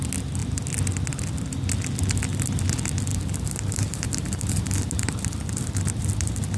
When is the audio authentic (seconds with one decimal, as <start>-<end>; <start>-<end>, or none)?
0.0-3.1